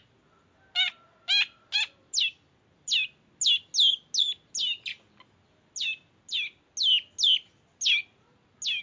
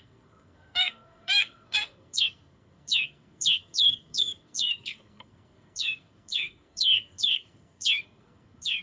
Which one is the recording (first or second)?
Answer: first